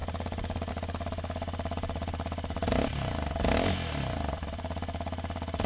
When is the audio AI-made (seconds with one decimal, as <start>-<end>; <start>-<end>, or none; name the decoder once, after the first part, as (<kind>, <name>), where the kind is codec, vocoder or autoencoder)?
none